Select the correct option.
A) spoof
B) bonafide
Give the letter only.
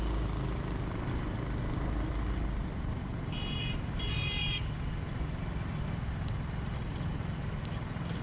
B